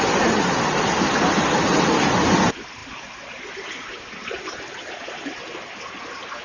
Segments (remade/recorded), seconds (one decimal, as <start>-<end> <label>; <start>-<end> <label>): 0.0-6.4 recorded